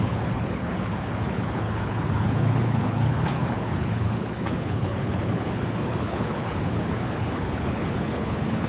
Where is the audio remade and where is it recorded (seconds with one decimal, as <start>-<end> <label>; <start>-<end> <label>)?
0.0-8.7 remade